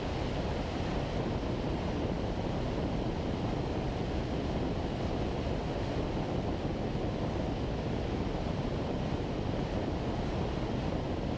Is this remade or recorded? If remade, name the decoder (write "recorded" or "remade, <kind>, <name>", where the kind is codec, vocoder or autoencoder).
recorded